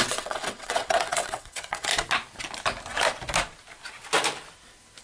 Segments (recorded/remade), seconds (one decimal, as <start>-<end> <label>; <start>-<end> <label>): 0.0-1.9 remade; 1.9-5.0 recorded